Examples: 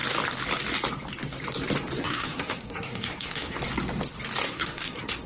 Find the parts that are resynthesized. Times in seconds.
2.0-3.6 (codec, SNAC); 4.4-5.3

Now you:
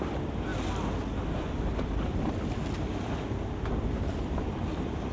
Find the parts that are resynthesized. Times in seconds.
none

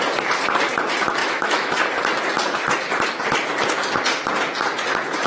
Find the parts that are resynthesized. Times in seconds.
1.2-1.7 (autoencoder, DAC-VAE)

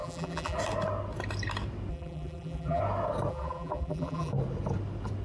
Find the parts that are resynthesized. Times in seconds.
0.0-0.6 (vocoder, BigVGAN v2); 1.9-2.8; 3.3-4.3